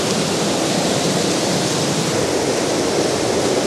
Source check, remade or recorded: recorded